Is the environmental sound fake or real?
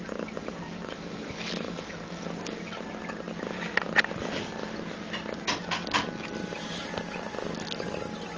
real